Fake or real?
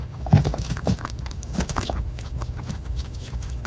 fake